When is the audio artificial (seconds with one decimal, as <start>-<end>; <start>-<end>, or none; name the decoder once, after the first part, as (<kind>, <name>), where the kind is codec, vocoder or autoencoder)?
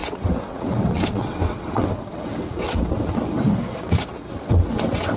0.0-5.2 (vocoder, WaveNeXt)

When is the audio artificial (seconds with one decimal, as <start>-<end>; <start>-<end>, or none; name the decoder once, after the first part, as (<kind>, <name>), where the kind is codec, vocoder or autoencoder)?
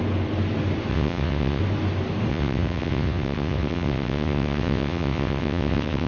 0.9-1.6 (vocoder, WaveNeXt); 2.3-6.1